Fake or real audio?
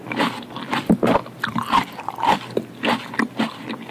real